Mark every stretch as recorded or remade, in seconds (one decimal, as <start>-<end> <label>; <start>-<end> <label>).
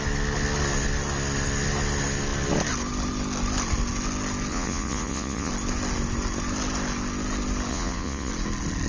0.0-4.5 recorded; 4.5-5.5 remade; 5.5-7.7 recorded; 7.7-8.3 remade; 8.3-8.9 recorded